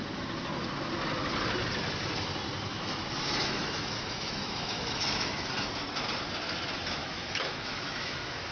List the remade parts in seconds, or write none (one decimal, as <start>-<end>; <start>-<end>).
2.7-5.5; 7.0-8.1